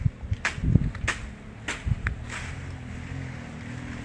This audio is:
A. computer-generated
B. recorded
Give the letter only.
B